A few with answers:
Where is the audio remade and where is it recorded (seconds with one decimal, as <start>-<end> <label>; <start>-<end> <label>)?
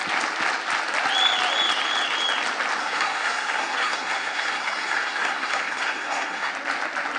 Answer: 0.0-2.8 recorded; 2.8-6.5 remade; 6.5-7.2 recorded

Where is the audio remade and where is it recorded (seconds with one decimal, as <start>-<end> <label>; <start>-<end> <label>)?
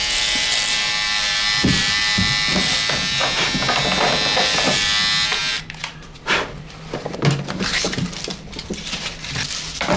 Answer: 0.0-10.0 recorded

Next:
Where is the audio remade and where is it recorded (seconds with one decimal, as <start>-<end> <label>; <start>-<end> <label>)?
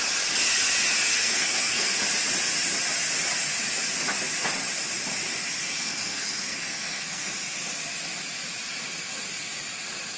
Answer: 0.0-1.1 recorded; 1.1-2.0 remade; 2.0-5.6 recorded; 5.6-7.3 remade; 7.3-10.2 recorded